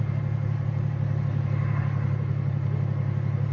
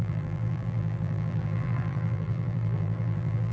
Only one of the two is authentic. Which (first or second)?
first